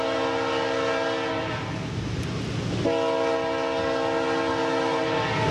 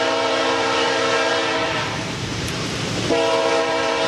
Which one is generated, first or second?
second